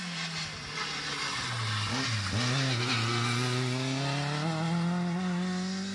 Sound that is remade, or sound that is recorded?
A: recorded